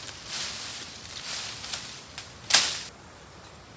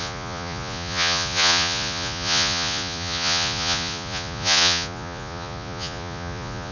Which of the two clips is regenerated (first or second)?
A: second